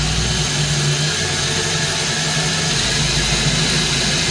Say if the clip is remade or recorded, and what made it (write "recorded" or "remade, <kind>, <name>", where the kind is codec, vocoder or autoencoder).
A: recorded